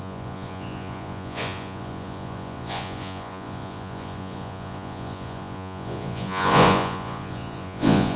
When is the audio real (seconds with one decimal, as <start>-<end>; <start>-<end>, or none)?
none